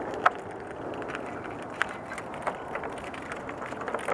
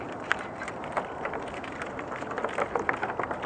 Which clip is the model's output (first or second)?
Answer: second